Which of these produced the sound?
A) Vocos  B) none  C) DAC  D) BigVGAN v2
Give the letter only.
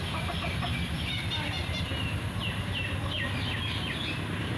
B